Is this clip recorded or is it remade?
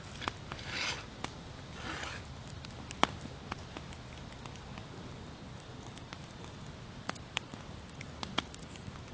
recorded